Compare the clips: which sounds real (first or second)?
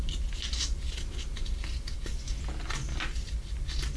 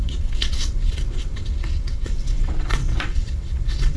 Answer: first